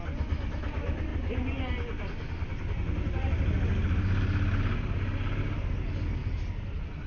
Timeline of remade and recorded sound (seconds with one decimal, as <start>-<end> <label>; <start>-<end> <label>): 0.0-7.1 recorded

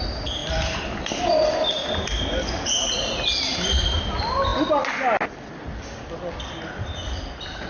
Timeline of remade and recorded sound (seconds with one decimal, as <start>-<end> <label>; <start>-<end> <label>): 0.0-7.7 recorded

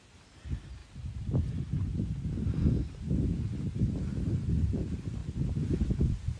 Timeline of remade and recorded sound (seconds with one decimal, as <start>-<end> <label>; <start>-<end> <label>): 0.0-0.8 remade; 0.8-4.6 recorded; 4.6-6.4 remade